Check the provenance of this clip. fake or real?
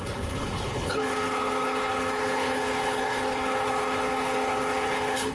fake